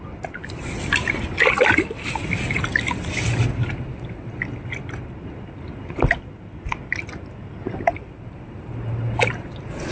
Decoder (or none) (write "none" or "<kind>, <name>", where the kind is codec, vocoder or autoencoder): none